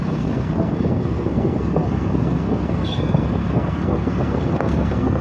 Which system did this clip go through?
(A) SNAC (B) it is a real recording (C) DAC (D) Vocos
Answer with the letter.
A